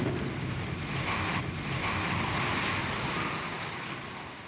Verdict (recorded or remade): recorded